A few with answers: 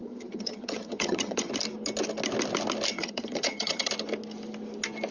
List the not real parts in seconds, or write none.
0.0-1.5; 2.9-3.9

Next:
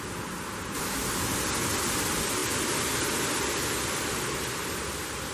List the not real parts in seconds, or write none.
none

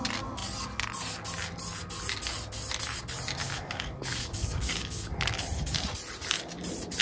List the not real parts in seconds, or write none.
3.4-5.1